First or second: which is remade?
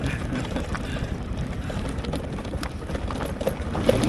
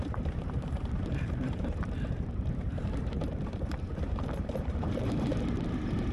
second